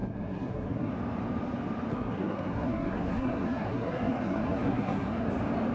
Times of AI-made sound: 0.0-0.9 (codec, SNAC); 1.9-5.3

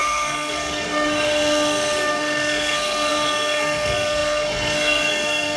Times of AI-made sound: 0.0-5.6 (codec, SNAC)